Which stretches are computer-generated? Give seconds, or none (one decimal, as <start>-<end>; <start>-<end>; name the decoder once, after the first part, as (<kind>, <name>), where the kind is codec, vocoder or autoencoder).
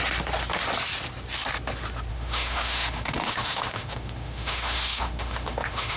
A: 2.1-6.0 (autoencoder, DAC-VAE)